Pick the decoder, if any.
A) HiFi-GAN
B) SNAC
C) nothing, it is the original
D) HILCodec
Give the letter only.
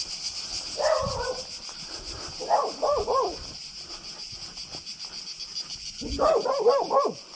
C